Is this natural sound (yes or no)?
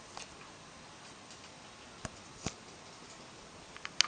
yes